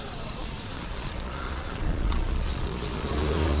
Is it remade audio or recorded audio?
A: remade